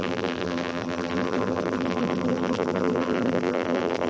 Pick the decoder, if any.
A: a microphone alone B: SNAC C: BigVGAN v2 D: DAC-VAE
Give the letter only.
C